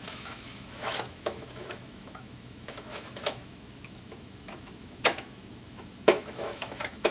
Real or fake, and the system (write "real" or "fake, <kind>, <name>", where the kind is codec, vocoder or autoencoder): fake, autoencoder, DAC-VAE